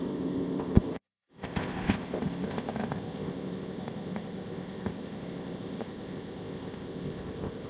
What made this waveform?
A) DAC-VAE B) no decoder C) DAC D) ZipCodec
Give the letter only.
D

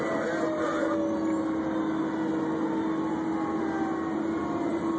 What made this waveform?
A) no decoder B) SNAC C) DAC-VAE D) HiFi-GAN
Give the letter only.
A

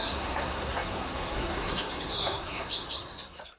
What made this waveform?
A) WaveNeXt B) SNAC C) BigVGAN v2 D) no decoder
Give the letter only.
B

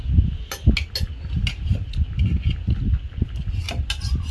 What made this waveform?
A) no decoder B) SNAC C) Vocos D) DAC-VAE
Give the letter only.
A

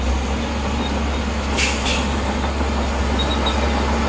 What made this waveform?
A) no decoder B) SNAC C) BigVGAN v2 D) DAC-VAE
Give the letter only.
A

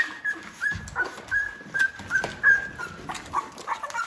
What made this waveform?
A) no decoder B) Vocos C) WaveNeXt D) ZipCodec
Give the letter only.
A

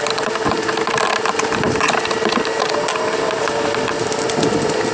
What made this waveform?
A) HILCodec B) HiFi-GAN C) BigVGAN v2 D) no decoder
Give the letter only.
C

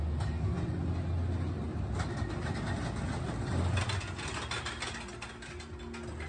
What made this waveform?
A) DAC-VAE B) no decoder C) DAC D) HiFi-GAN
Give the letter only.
B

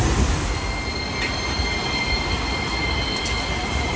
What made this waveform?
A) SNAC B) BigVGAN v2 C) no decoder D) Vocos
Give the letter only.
C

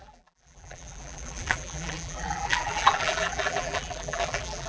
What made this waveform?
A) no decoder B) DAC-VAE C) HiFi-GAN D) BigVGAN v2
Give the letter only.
D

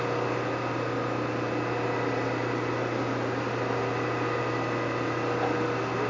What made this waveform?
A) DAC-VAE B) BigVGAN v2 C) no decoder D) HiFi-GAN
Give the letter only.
C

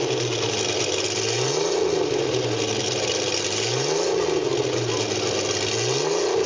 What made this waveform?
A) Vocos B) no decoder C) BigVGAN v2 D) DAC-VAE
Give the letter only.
B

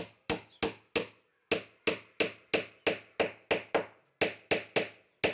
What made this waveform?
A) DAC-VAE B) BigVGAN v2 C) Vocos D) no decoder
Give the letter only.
D